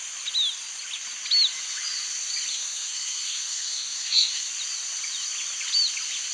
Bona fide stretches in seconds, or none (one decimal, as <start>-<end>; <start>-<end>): 0.0-2.5; 4.5-6.3